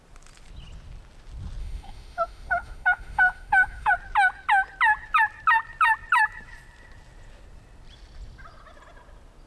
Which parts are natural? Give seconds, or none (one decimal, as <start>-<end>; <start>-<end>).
0.0-1.6; 3.9-9.5